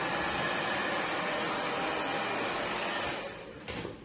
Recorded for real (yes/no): yes